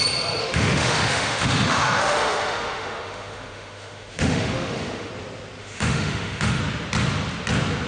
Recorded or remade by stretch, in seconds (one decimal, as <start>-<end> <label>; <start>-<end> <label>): 0.0-0.4 recorded; 0.4-5.1 remade; 5.1-5.6 recorded; 5.6-6.6 remade; 6.6-7.9 recorded